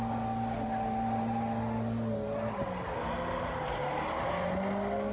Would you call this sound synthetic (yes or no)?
no